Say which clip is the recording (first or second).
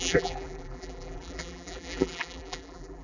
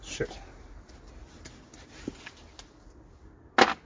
second